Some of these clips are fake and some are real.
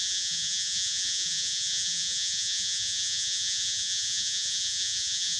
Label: fake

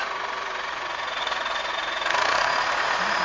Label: fake